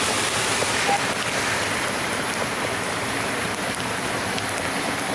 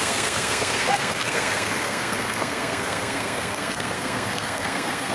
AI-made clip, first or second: second